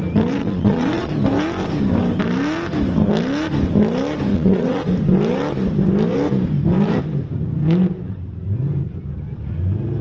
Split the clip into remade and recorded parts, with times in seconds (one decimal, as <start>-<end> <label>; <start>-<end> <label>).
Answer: 0.0-0.4 recorded; 0.4-1.1 remade; 1.1-4.3 recorded; 4.3-4.9 remade; 4.9-10.0 recorded